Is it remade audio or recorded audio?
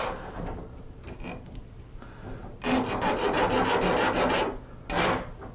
recorded